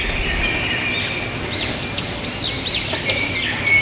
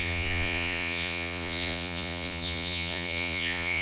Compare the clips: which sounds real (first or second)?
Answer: first